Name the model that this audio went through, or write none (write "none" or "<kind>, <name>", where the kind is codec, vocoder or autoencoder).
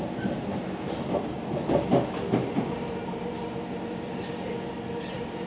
none